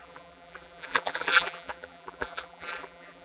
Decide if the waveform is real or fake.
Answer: fake